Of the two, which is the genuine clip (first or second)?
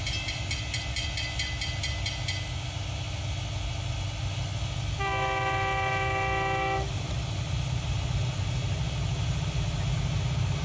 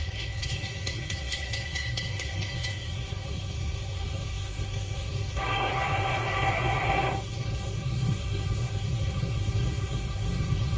first